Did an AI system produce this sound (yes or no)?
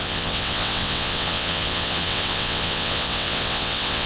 yes